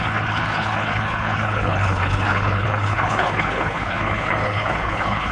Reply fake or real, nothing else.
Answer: fake